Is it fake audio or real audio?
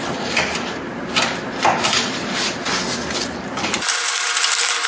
real